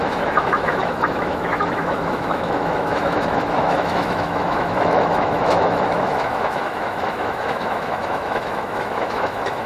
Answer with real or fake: fake